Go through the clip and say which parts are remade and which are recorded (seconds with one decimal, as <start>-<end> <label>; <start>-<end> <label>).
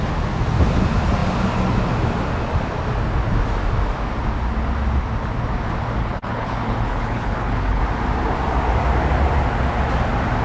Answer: 0.0-6.0 recorded; 6.0-7.8 remade; 7.8-10.4 recorded